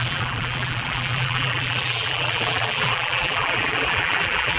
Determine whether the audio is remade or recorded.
remade